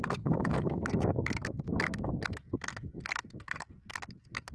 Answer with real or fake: fake